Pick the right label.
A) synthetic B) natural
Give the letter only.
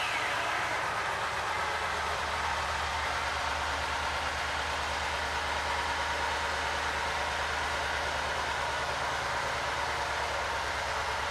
B